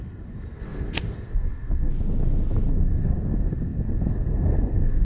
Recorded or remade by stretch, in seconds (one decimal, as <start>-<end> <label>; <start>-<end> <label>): 0.0-1.9 remade; 1.9-2.7 recorded; 2.7-5.0 remade